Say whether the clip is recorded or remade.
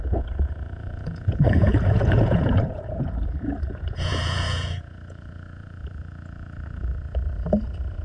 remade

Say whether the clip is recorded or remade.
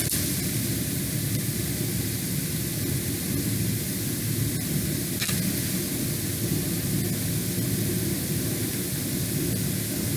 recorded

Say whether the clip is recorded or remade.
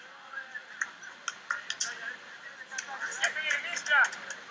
recorded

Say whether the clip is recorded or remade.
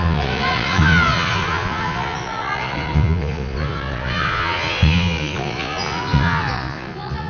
remade